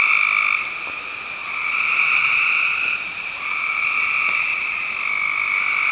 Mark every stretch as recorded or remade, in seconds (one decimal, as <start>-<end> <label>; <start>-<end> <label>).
0.0-1.4 recorded; 1.4-4.9 remade; 4.9-5.9 recorded